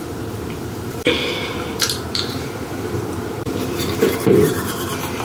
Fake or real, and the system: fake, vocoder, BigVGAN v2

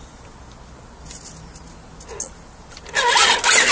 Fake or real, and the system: real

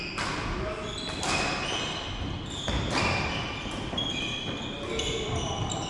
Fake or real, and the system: real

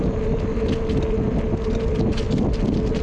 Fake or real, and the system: real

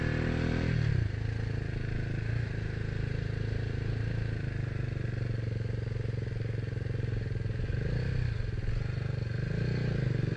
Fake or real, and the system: real